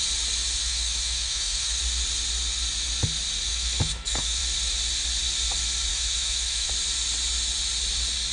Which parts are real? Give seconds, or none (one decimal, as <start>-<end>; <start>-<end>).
0.0-0.6; 1.8-3.5; 4.4-5.9; 6.7-8.3